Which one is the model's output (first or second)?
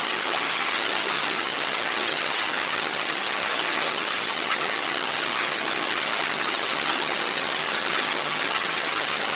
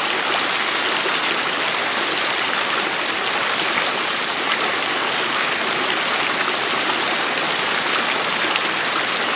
first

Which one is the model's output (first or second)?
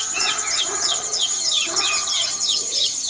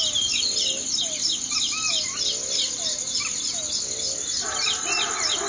first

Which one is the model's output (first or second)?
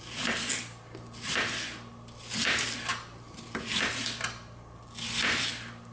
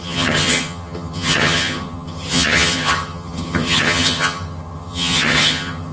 second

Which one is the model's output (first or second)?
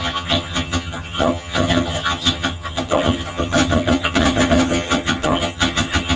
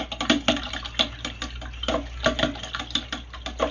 first